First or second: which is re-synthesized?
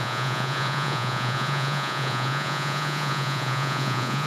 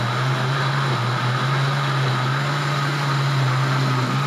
first